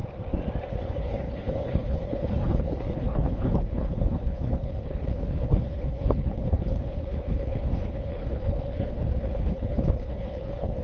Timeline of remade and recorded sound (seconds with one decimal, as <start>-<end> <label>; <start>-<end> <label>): 0.0-0.7 recorded; 0.7-10.8 remade